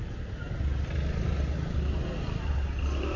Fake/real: real